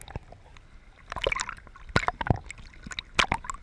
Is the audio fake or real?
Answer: real